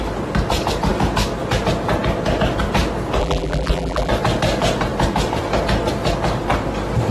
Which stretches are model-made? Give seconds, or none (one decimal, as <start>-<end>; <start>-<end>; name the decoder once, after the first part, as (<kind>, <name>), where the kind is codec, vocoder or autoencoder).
3.2-4.1 (vocoder, BigVGAN v2)